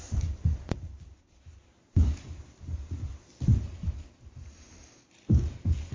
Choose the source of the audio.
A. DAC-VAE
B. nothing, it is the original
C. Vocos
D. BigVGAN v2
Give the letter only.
B